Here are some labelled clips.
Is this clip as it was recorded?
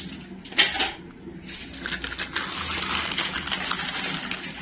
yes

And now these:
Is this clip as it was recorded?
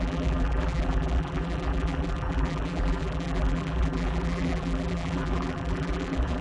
no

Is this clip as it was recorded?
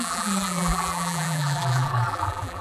no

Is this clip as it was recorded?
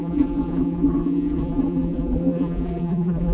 no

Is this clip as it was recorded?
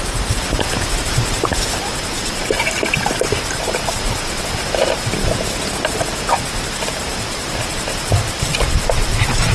no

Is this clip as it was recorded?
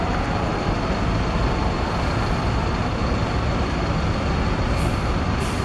no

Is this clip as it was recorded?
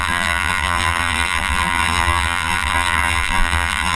no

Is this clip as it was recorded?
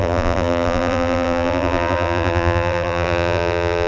no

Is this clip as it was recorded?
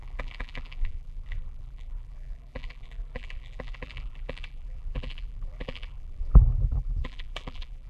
no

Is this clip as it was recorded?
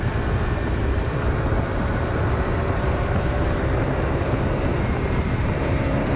no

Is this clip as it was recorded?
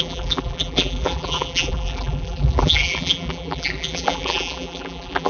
no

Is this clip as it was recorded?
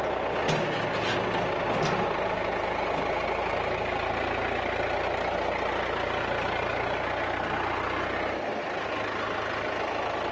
yes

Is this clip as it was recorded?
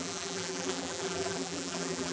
no